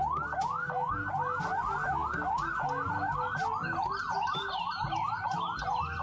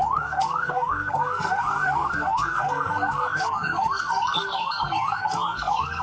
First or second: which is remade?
second